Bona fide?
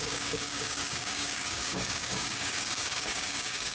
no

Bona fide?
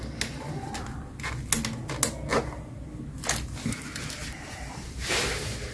yes